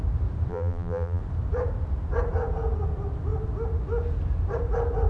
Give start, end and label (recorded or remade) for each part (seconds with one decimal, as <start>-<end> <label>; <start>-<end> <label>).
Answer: 0.0-0.5 recorded; 0.5-1.2 remade; 1.2-5.1 recorded